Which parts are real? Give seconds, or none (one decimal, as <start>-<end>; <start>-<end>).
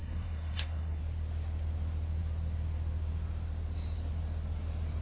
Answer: 1.0-5.0